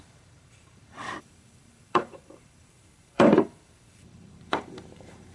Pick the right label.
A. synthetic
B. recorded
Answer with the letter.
A